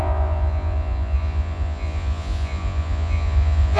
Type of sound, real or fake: fake